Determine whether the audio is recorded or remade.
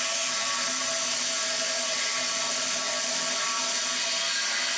recorded